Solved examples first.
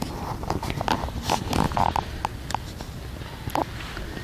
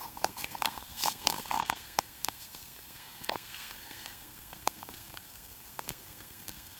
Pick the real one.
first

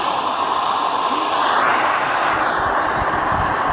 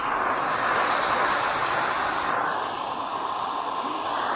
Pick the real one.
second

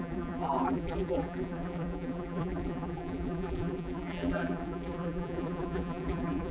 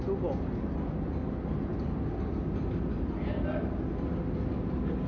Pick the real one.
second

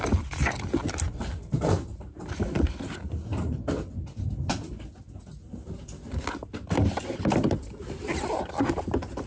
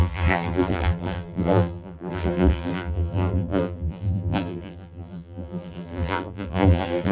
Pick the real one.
first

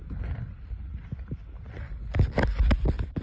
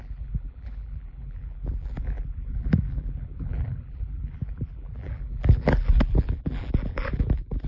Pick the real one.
first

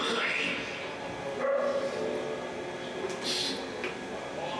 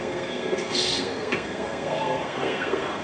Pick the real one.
first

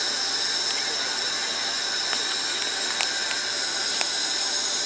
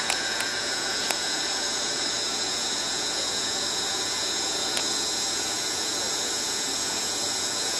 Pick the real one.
first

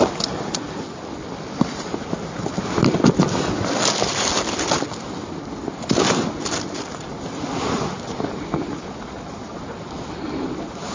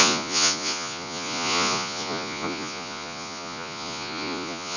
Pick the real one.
first